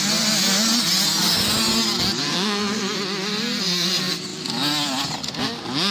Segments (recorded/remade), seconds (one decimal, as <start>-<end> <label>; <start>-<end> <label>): 0.0-2.3 recorded; 2.3-2.8 remade; 2.8-5.9 recorded